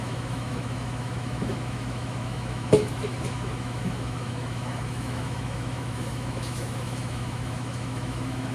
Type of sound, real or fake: fake